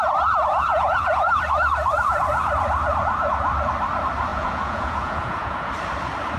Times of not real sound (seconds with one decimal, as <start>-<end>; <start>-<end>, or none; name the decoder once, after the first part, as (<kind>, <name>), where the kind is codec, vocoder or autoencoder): 0.7-1.4 (vocoder, Vocos); 4.3-5.7